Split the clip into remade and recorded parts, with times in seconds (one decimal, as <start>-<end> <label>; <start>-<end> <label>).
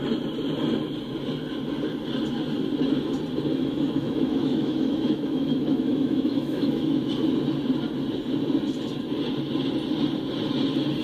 0.0-3.5 recorded; 3.5-7.1 remade; 7.1-11.0 recorded